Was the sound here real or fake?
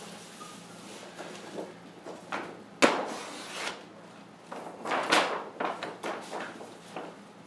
real